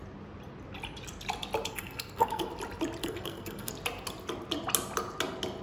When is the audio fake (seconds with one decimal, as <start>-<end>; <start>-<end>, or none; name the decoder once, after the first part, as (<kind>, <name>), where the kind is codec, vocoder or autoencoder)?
1.7-2.5 (codec, SNAC); 3.0-3.7